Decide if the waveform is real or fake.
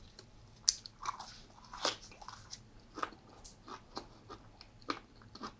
real